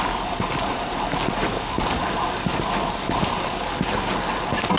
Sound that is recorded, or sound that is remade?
recorded